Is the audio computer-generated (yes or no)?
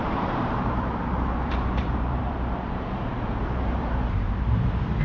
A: yes